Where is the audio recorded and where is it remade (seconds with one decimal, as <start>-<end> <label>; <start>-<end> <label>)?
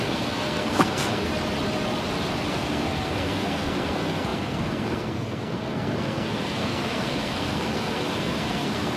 0.0-1.3 remade; 1.3-2.5 recorded; 2.5-9.0 remade